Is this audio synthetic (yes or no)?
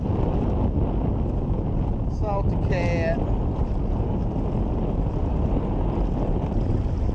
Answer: no